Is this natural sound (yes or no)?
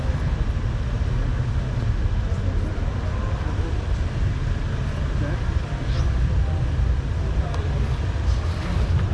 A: yes